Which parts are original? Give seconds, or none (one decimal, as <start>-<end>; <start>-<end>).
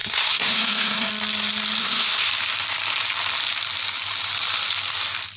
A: 1.1-1.8; 2.3-5.4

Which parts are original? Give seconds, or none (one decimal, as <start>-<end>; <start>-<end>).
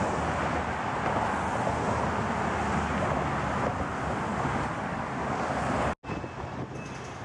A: 0.0-4.3; 5.5-7.2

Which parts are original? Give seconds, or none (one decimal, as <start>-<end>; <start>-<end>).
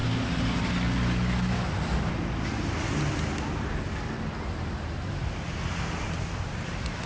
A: 0.0-7.1